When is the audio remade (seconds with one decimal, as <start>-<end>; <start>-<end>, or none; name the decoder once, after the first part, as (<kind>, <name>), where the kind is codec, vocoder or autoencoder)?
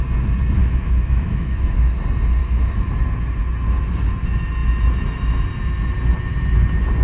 0.6-2.0 (autoencoder, DAC-VAE); 2.4-2.9